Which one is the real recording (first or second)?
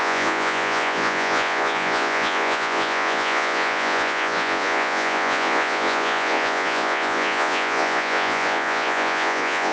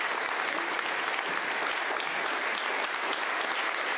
second